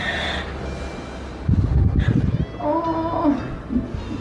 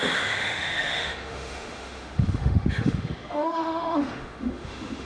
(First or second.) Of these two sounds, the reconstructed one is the second